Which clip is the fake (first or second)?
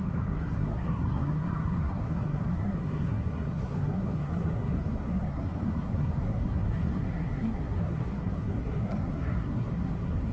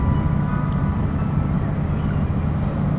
first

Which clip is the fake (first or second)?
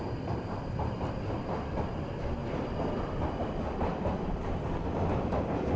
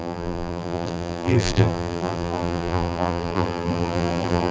second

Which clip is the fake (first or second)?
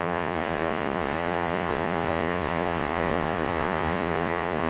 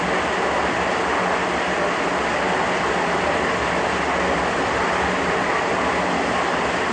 first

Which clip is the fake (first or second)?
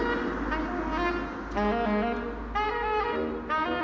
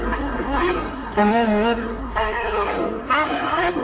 second